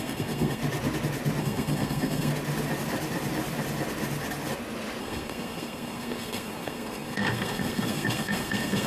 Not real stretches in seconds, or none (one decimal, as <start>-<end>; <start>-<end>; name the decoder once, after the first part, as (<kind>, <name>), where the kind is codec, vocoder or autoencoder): 0.0-0.6 (codec, SNAC); 1.4-2.3; 5.0-8.9